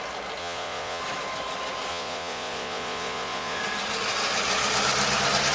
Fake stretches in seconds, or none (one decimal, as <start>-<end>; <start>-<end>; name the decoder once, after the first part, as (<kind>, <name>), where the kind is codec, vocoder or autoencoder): 0.4-1.0 (vocoder, Vocos); 1.9-3.6